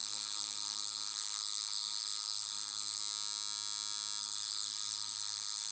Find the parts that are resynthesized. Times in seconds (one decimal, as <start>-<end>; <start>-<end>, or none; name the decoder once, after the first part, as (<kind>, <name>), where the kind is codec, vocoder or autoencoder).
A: 0.0-3.0 (codec, SNAC); 4.2-5.7